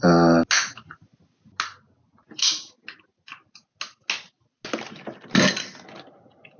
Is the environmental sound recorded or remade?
recorded